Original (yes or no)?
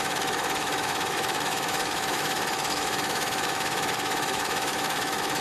no